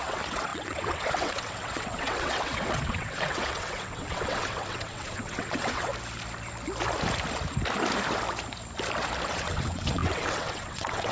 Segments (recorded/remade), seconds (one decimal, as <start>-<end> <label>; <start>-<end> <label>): 0.0-5.9 remade; 5.9-9.3 recorded; 9.3-11.1 remade

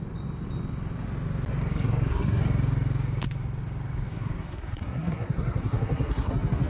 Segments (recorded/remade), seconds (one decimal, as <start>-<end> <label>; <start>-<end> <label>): 0.0-1.7 recorded; 1.7-2.4 remade; 2.4-4.1 recorded; 4.1-6.3 remade; 6.3-6.7 recorded

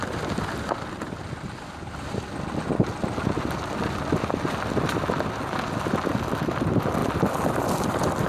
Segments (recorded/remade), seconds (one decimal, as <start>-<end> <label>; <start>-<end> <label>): 0.0-8.3 recorded

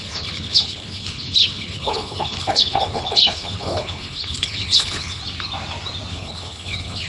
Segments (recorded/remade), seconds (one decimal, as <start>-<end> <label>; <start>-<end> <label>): 0.0-5.2 remade; 5.2-6.1 recorded; 6.1-7.1 remade

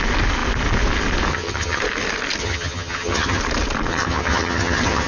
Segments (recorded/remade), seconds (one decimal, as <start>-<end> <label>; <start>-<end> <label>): 0.0-1.3 recorded; 1.3-1.8 remade; 1.8-2.4 recorded; 2.4-3.4 remade; 3.4-3.9 recorded; 3.9-5.1 remade